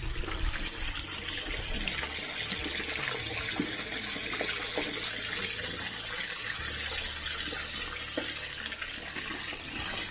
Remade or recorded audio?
recorded